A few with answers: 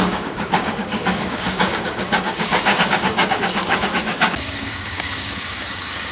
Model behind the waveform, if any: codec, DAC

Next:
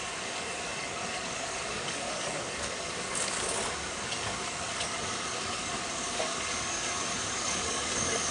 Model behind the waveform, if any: codec, DAC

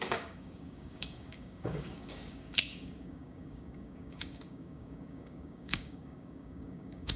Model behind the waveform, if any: codec, DAC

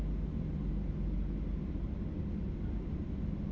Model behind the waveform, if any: none